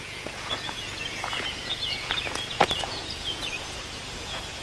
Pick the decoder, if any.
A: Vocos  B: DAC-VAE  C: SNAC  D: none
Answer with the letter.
A